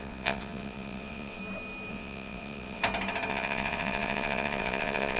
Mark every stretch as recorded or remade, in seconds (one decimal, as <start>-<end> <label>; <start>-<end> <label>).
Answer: 0.0-1.4 remade; 1.4-1.9 recorded; 1.9-2.8 remade; 2.8-3.3 recorded; 3.3-5.2 remade